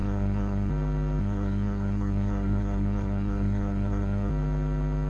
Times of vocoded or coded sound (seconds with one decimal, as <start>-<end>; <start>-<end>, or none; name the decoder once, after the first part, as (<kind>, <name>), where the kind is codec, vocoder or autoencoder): 0.0-0.7 (codec, SNAC); 1.2-4.3